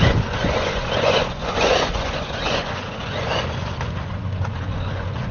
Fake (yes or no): yes